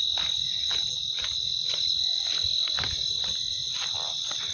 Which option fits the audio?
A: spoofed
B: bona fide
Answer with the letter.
B